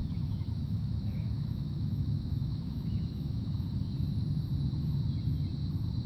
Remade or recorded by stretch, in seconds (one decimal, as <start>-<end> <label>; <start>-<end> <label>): 0.0-3.6 remade; 3.6-6.1 recorded